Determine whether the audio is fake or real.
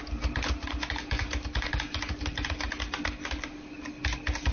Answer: real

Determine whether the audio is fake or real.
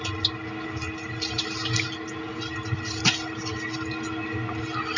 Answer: real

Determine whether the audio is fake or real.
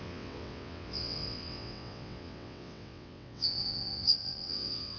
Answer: fake